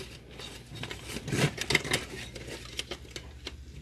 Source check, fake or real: real